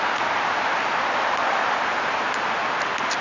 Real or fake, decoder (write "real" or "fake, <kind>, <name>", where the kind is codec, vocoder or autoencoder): real